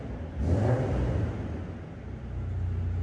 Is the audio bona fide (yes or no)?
yes